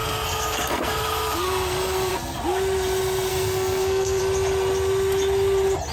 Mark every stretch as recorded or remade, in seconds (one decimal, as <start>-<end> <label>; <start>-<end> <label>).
0.0-2.1 remade; 2.1-3.3 recorded; 3.3-4.2 remade; 4.2-5.9 recorded